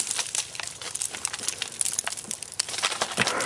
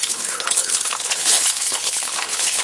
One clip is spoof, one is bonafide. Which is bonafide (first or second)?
first